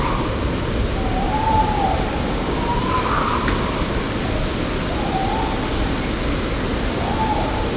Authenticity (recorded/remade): recorded